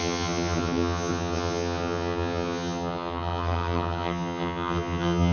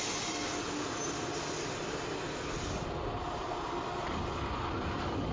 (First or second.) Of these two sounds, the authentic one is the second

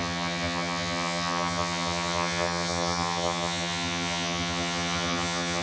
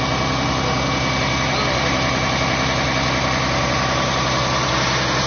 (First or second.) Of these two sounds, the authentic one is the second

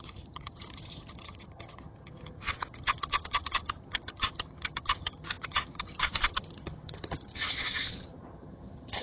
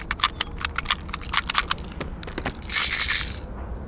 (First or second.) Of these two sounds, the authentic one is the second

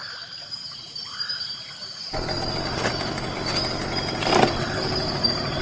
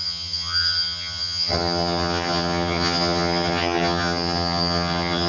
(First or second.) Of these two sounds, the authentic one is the first